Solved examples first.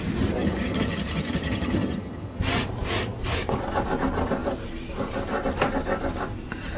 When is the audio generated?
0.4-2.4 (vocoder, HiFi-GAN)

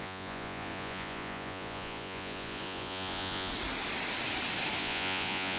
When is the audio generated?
0.0-3.5 (vocoder, Vocos); 4.8-5.6

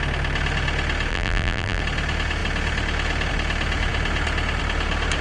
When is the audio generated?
1.1-1.8 (vocoder, BigVGAN v2)

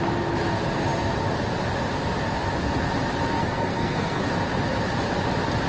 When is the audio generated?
3.4-4.2 (codec, SNAC)

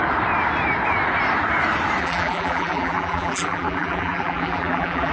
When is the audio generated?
2.0-5.1 (vocoder, BigVGAN v2)